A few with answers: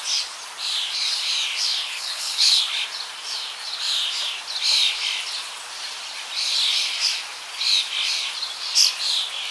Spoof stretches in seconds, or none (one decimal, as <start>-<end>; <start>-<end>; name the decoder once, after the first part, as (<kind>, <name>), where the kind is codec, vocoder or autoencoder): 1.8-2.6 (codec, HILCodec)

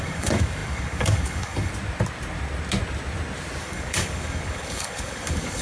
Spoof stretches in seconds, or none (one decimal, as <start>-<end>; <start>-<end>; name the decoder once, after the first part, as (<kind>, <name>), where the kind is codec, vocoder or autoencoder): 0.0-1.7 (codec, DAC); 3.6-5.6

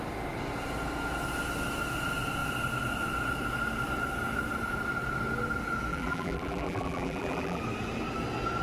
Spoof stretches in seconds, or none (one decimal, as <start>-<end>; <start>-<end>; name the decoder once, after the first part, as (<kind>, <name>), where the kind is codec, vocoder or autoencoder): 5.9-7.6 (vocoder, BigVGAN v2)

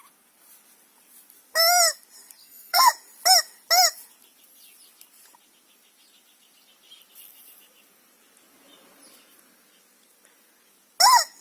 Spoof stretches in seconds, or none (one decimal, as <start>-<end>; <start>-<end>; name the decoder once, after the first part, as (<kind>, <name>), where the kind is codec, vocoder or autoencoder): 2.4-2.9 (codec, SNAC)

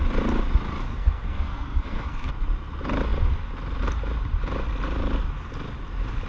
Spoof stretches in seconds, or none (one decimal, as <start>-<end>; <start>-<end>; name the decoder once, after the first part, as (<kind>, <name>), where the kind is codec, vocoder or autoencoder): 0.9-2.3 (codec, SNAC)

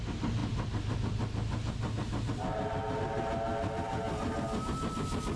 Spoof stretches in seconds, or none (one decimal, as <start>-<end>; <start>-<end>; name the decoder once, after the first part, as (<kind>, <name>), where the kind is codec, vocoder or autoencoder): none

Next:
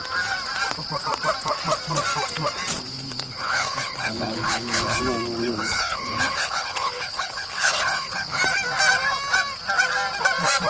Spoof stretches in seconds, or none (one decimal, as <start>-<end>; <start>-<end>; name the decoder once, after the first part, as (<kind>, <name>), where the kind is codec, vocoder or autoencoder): 2.9-5.0 (codec, HILCodec); 5.4-8.4